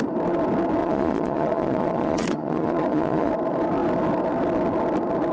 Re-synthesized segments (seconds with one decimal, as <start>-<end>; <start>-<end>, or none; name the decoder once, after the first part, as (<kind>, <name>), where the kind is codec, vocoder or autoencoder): 0.8-3.3 (vocoder, Vocos)